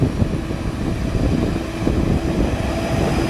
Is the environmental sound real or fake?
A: real